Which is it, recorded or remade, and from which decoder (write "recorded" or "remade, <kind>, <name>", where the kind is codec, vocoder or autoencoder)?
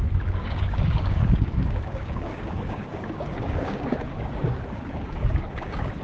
remade, codec, DAC